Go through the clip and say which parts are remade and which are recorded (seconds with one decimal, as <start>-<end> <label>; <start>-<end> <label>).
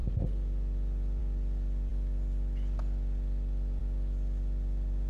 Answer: 0.0-5.1 recorded